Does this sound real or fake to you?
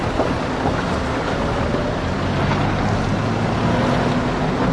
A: real